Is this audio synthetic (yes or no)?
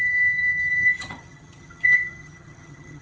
yes